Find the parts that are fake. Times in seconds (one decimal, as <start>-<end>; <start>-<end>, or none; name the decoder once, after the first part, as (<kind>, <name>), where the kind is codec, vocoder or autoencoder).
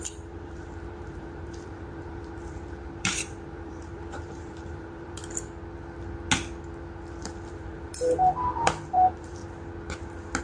0.0-5.2 (vocoder, BigVGAN v2); 7.5-9.4